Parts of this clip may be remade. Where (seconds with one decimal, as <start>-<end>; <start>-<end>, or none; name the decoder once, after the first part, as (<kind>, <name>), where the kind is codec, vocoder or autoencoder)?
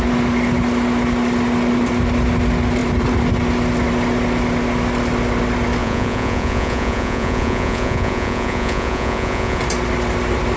5.8-9.6 (vocoder, Vocos)